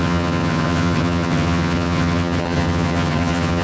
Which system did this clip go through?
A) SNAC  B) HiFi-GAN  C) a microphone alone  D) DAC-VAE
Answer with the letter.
B